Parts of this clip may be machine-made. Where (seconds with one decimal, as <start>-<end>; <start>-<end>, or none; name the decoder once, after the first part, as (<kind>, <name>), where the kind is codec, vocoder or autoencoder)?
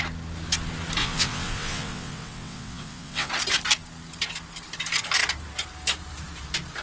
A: 1.0-3.3 (vocoder, WaveNeXt)